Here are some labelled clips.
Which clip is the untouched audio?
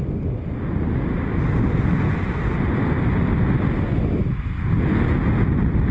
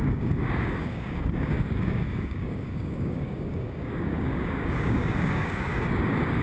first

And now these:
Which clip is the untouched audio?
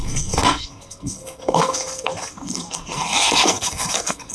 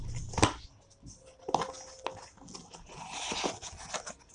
second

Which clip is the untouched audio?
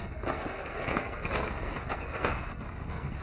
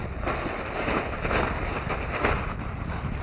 second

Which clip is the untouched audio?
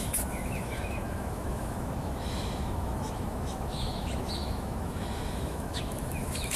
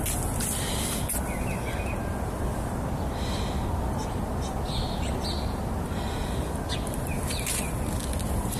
second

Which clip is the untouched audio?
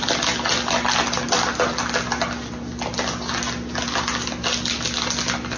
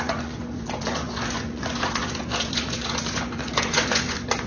first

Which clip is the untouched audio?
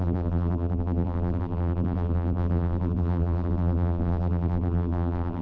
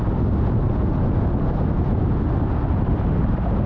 second